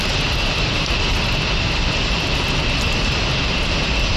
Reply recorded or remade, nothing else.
recorded